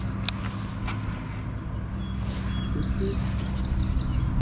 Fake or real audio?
real